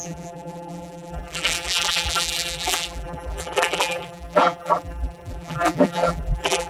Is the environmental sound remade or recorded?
remade